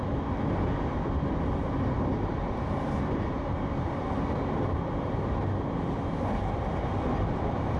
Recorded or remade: recorded